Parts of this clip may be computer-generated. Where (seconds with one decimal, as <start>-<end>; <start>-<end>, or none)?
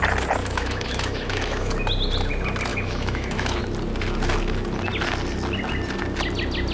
0.4-1.7; 2.7-3.6